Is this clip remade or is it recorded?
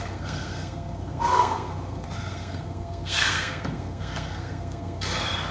remade